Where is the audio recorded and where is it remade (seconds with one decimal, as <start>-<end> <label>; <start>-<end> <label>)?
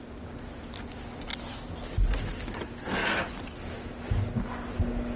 0.0-5.2 recorded